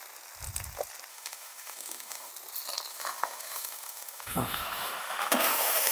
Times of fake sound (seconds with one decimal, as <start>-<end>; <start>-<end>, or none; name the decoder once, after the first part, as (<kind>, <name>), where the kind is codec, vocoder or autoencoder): 1.1-2.3 (autoencoder, DAC-VAE); 2.9-5.9